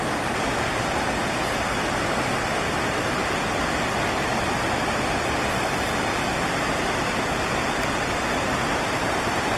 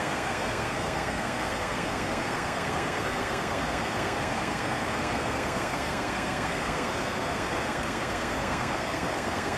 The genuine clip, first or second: first